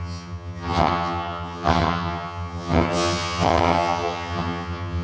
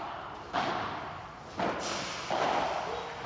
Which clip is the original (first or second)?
second